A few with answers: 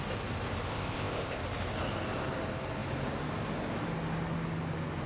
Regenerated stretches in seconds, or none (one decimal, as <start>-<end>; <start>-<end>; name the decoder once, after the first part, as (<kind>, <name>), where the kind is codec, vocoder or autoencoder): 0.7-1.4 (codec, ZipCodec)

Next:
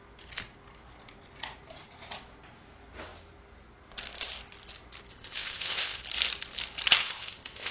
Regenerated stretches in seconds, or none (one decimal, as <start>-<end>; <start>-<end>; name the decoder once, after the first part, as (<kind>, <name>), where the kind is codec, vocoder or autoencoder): 5.1-6.0 (codec, ZipCodec); 7.0-7.7

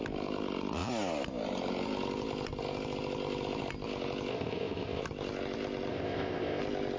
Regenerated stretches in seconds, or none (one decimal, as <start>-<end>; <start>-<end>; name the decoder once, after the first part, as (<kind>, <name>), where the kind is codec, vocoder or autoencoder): 4.3-5.0 (codec, ZipCodec); 5.9-6.6